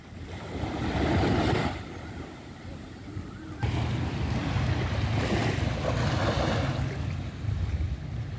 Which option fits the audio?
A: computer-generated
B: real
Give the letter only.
B